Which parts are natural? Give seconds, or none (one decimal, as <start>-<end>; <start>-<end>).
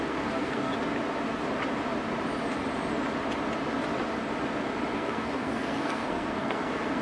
0.7-4.9